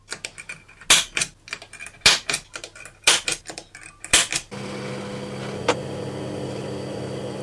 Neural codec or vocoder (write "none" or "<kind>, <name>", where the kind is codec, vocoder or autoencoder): none